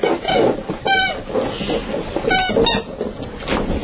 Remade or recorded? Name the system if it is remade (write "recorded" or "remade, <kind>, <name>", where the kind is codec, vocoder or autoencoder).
recorded